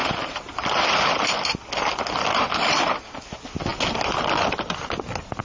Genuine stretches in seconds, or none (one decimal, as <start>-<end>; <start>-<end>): 3.2-5.4